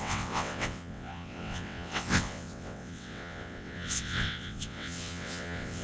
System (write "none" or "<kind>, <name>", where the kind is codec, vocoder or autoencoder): vocoder, WaveNeXt